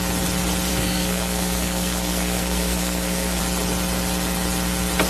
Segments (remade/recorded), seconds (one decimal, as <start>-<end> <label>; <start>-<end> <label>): 0.0-0.7 recorded; 0.7-3.4 remade; 3.4-5.1 recorded